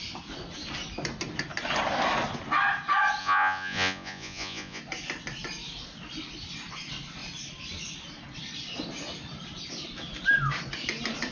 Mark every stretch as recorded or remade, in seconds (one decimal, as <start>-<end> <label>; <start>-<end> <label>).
0.0-3.2 recorded; 3.2-4.8 remade; 4.8-11.3 recorded